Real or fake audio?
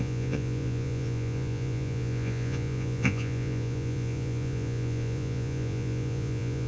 fake